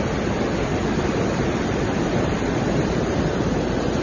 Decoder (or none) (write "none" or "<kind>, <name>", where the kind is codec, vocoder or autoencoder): none